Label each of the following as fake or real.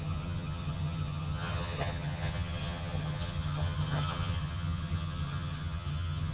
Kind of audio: fake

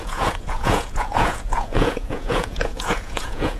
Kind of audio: fake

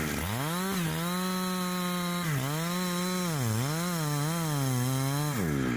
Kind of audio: real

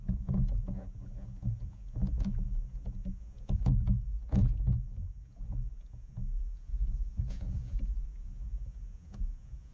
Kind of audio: fake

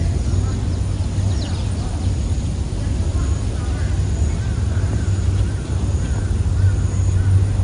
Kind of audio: real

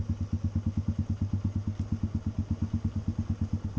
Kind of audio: real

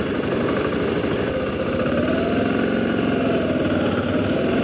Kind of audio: fake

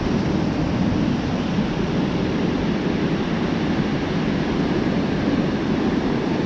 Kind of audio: real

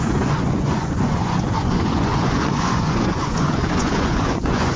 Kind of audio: fake